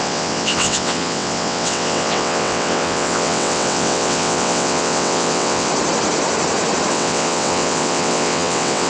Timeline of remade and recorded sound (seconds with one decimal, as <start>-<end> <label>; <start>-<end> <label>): 0.0-5.7 remade; 5.7-6.9 recorded; 6.9-8.9 remade